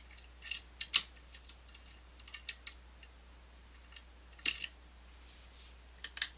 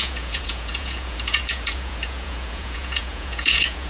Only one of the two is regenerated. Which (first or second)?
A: second